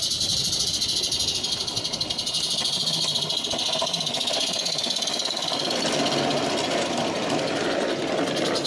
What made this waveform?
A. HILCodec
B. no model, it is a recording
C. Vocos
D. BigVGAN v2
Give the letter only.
B